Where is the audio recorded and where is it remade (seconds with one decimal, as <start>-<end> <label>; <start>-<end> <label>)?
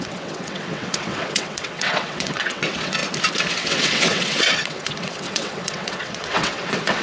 0.0-3.0 remade; 3.0-3.5 recorded; 3.5-7.0 remade